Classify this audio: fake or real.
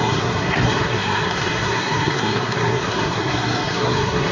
fake